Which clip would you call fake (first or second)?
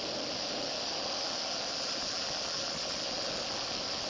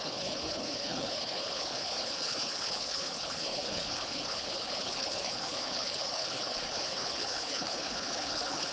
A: second